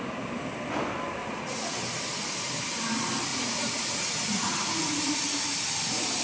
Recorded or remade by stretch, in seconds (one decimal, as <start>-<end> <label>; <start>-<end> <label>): 0.0-1.2 recorded; 1.2-1.7 remade; 1.7-3.3 recorded; 3.3-5.2 remade; 5.2-6.2 recorded